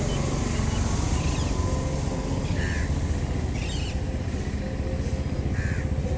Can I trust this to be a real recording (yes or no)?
yes